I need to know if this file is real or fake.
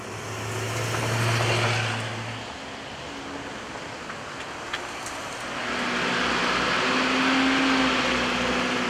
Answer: real